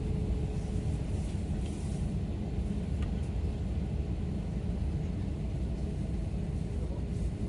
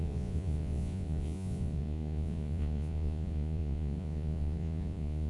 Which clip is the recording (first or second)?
first